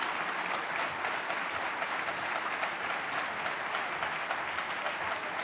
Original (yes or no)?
yes